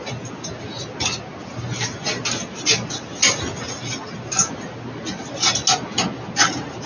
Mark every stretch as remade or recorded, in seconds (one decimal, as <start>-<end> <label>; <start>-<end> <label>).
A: 0.0-6.9 recorded